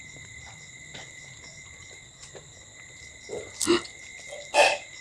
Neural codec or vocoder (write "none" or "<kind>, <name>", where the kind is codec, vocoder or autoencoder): none